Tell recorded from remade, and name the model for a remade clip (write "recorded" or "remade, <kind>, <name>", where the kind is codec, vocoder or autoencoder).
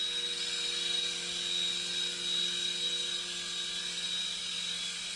recorded